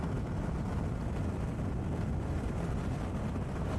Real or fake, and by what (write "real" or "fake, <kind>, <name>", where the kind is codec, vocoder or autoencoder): real